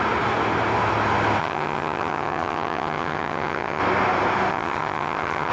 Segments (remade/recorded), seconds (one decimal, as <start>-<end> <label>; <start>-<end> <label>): 0.0-1.4 recorded; 1.4-3.8 remade; 3.8-4.5 recorded; 4.5-5.5 remade